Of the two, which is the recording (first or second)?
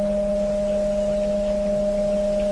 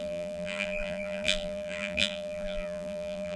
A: first